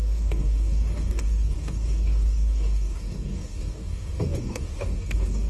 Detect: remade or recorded remade